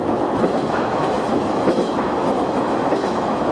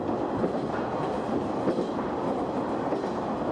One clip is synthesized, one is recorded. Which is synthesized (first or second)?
first